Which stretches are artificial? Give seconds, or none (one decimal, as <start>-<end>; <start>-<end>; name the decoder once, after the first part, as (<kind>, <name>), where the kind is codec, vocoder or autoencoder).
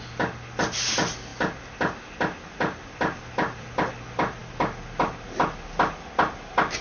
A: none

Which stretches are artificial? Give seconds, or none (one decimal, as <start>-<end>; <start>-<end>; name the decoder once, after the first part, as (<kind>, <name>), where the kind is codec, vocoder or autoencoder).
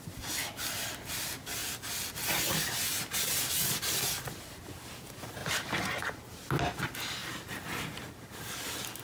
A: 5.4-5.9 (vocoder, BigVGAN v2); 7.2-8.0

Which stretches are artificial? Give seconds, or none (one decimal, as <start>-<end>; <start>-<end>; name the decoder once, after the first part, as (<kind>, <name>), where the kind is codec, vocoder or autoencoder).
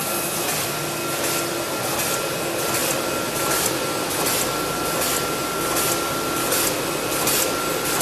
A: none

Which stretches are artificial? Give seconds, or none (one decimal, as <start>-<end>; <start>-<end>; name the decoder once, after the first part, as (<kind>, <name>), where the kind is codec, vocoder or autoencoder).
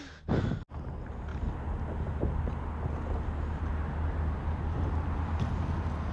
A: none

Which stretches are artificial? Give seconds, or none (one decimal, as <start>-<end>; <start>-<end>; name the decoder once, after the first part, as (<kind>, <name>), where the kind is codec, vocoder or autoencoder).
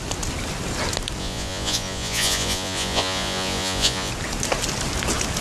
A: 1.2-4.1 (vocoder, Vocos)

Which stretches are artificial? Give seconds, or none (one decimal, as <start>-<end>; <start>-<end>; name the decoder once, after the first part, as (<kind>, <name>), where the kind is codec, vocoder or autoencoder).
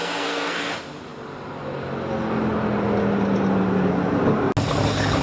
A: 0.0-0.7 (codec, SNAC)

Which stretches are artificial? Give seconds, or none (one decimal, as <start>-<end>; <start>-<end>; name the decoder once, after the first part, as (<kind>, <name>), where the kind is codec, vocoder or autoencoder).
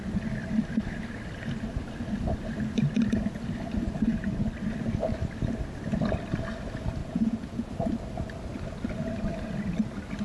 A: 7.0-7.7 (vocoder, Vocos)